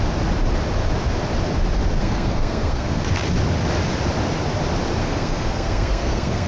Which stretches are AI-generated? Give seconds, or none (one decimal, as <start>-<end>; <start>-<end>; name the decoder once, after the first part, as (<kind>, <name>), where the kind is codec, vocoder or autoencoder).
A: 2.0-3.0 (codec, SNAC); 5.0-6.5